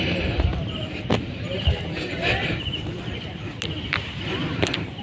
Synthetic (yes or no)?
no